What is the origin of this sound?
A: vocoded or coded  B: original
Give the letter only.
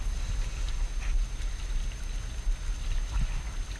B